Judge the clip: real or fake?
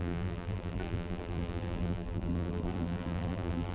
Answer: fake